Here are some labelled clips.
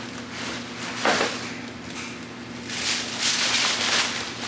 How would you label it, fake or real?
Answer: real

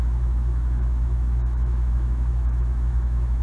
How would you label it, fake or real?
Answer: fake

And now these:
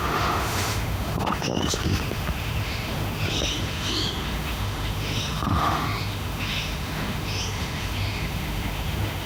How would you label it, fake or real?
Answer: fake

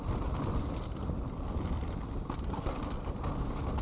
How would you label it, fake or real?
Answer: real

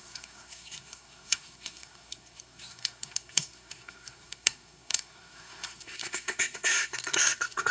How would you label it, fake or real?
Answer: fake